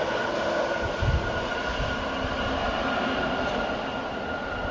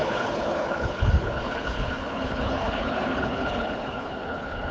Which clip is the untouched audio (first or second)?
first